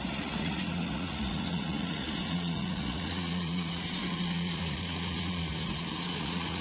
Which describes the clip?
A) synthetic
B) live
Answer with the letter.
A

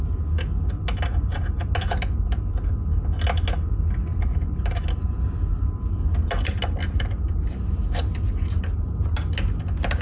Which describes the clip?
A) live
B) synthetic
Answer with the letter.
A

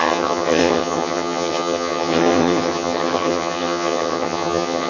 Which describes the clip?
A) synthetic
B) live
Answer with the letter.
A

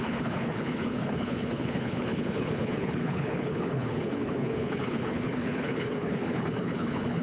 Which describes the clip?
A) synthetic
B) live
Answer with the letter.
A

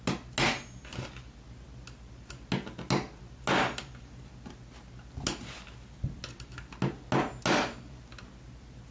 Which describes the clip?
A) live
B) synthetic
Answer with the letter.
A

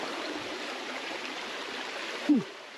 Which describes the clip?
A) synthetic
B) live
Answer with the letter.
A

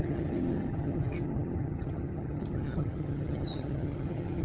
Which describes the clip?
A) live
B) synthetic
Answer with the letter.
B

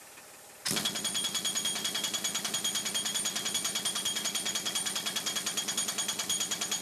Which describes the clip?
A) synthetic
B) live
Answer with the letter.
B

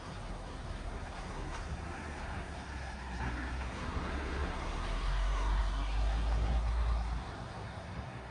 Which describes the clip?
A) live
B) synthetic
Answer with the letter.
B